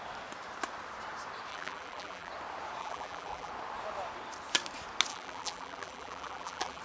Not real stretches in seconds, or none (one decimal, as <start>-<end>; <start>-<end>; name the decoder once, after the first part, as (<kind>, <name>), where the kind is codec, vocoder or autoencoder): 1.5-2.3 (vocoder, BigVGAN v2); 2.8-3.5; 5.1-6.8